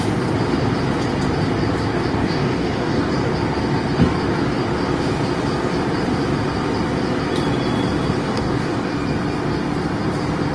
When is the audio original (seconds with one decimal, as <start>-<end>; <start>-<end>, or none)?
0.0-2.2; 3.1-8.2; 8.9-10.5